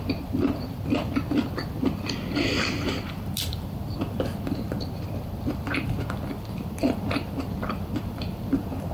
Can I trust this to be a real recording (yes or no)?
no